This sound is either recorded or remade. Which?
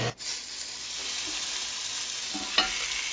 recorded